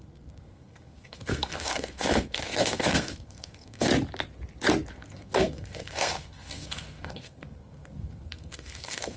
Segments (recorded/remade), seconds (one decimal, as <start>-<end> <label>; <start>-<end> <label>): 0.0-3.9 remade; 3.9-4.9 recorded; 4.9-9.2 remade